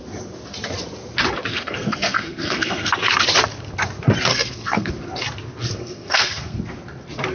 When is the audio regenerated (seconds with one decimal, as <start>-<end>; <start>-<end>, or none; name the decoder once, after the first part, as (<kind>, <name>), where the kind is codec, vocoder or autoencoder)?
1.5-2.9 (codec, SNAC); 4.3-4.9; 5.6-6.6